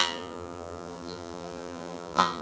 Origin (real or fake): fake